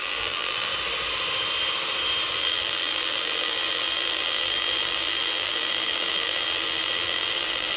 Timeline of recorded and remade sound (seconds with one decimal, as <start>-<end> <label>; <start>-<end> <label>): 0.0-0.7 remade; 0.7-2.3 recorded; 2.3-7.8 remade